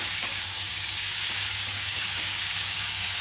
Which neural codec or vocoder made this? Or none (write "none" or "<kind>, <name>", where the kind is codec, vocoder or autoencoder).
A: codec, DAC